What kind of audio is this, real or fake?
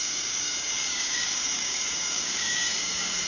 fake